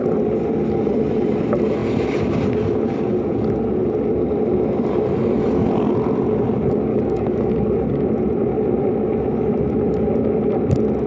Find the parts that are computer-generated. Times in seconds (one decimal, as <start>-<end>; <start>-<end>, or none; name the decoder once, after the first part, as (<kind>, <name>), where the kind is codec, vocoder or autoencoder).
6.9-7.5 (codec, DAC)